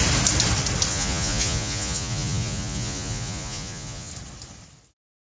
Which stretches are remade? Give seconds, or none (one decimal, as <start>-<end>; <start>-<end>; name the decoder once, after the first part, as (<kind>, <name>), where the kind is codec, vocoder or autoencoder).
0.9-4.1 (vocoder, Vocos)

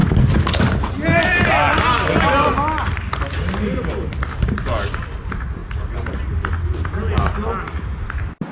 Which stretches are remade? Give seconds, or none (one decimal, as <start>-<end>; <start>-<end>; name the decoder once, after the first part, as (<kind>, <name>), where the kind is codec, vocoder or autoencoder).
none

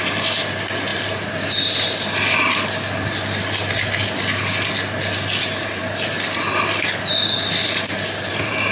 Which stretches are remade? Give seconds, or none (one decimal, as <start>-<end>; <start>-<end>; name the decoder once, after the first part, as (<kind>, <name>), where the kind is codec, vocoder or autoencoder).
none

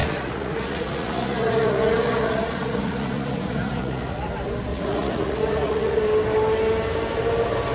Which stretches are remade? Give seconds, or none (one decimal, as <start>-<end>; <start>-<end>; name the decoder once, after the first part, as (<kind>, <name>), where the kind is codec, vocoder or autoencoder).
0.0-4.3 (vocoder, Vocos); 4.7-6.0

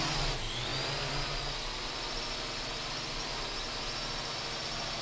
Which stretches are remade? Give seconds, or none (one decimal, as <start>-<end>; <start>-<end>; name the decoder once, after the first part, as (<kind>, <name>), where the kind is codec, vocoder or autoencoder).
none